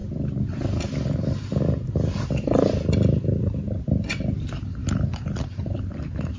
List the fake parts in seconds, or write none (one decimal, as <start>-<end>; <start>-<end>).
3.8-6.4